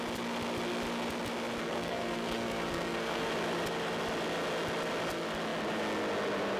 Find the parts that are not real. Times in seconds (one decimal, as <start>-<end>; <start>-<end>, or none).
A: 1.6-3.3